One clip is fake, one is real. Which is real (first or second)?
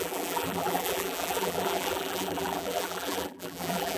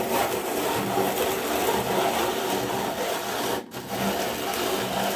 second